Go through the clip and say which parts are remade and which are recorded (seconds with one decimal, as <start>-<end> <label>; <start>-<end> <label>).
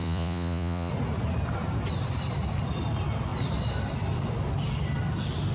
0.0-0.9 remade; 0.9-5.5 recorded